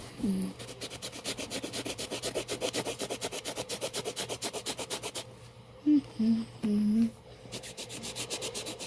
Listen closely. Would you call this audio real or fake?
real